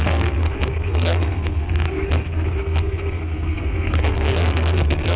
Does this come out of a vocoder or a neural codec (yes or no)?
yes